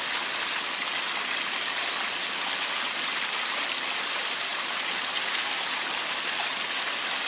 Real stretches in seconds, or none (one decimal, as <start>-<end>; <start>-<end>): 0.0-7.3